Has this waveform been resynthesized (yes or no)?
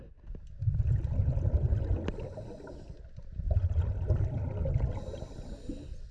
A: no